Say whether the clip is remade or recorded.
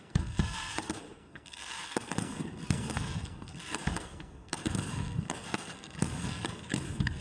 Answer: remade